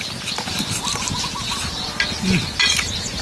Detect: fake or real real